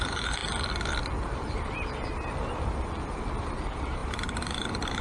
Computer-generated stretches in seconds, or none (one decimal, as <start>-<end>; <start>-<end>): 0.0-0.4; 3.4-5.0